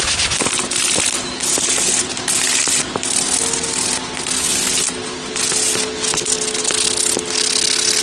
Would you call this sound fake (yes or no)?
no